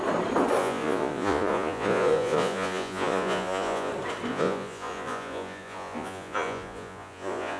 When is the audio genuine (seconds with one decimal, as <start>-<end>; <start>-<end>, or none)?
0.0-0.6; 3.9-4.3